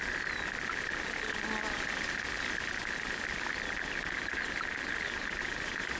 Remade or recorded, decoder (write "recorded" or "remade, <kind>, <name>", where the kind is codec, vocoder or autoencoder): recorded